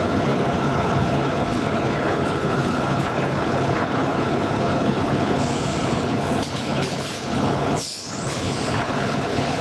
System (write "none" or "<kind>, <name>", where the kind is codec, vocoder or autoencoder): codec, HILCodec